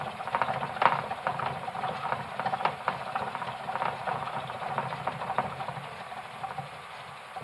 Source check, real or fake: real